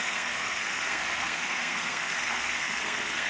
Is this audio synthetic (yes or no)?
yes